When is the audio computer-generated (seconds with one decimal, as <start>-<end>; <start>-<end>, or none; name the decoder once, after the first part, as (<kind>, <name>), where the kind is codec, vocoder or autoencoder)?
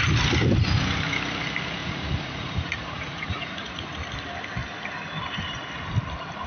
1.8-3.9 (vocoder, Vocos)